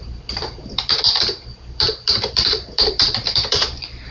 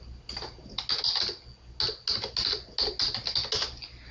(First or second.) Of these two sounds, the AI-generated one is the first